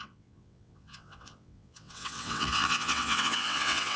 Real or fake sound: fake